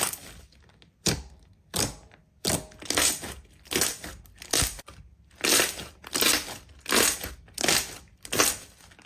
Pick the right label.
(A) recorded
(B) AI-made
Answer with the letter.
A